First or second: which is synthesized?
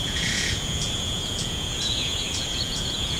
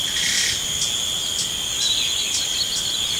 first